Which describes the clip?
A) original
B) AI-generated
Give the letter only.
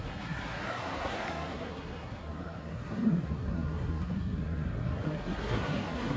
B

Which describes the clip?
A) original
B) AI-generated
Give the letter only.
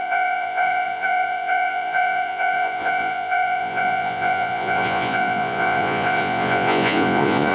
B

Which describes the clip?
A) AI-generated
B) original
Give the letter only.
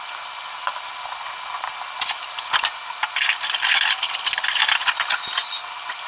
B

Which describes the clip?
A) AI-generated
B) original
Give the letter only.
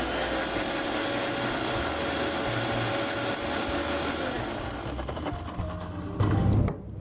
B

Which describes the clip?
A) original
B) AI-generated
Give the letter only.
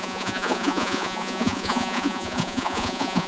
B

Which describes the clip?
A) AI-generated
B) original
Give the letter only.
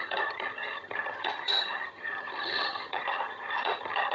A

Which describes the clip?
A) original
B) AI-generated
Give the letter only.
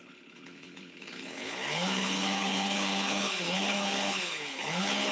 B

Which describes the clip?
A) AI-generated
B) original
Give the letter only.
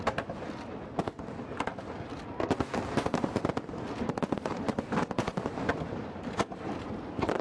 B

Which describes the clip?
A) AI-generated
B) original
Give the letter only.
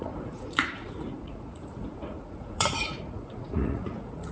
A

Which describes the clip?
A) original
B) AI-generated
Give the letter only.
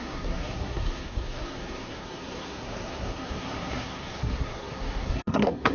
B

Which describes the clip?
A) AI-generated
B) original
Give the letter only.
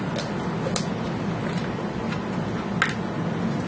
B